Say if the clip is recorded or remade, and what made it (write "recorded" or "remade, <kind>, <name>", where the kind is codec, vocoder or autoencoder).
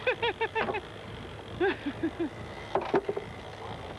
recorded